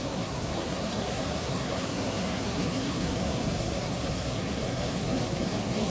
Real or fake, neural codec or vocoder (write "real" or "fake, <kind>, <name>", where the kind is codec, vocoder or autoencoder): fake, codec, SNAC